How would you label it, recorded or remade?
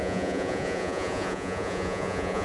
remade